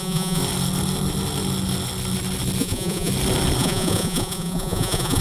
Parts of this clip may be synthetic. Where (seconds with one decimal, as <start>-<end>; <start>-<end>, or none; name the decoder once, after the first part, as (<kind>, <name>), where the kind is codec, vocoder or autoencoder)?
0.0-0.4 (vocoder, Vocos); 2.6-3.1; 3.6-5.2